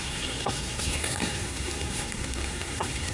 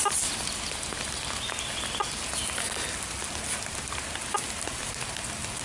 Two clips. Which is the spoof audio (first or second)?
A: first